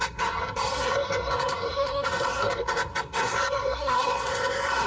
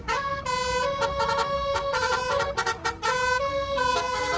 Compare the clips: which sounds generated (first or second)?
first